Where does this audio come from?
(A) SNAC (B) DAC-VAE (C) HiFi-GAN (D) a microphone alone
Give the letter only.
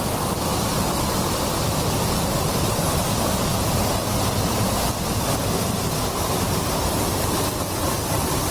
D